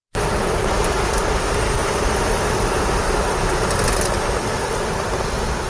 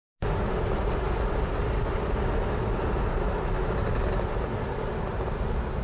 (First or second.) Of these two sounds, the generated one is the first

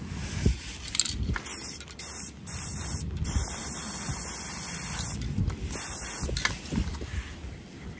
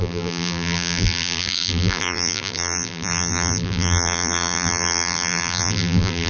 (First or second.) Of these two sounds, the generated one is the second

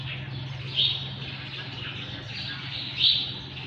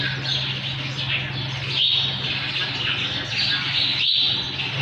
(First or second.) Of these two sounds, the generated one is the first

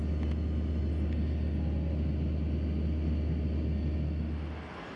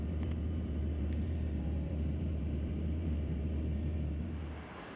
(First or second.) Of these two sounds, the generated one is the second